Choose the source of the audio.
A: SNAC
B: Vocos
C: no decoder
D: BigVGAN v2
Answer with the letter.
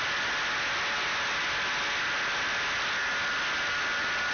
C